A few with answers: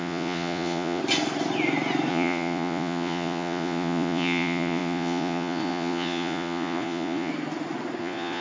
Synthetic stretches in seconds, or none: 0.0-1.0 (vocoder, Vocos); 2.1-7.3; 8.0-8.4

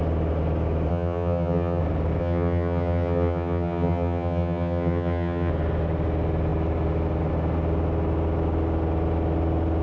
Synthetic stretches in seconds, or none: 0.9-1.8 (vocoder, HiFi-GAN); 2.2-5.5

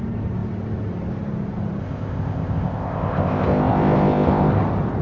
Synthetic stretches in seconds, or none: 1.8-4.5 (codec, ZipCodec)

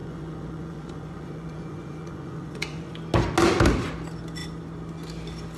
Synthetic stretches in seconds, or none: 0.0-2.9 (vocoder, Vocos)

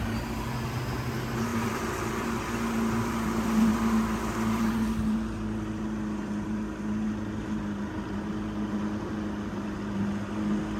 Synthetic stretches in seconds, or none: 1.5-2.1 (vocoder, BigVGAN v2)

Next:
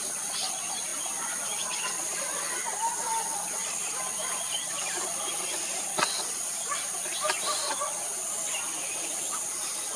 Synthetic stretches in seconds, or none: none

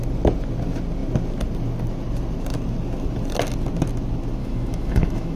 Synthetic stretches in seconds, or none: 4.4-5.4 (autoencoder, DAC-VAE)